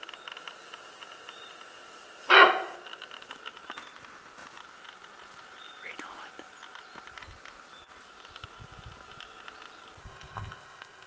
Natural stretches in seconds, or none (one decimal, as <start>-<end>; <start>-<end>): 0.0-10.0

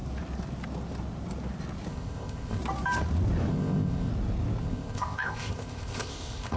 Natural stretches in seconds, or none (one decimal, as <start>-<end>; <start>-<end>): 0.0-1.9; 2.6-3.5; 4.1-4.6

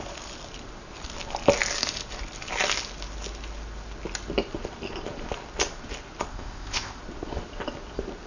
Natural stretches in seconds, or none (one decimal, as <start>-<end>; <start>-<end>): 0.0-6.3; 7.0-8.3

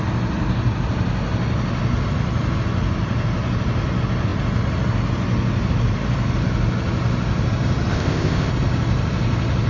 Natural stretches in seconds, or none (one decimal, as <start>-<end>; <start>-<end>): 0.0-7.9; 8.5-9.7

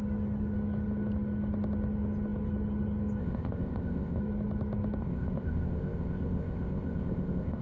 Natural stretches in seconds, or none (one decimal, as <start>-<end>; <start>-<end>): 0.0-3.2; 4.2-5.0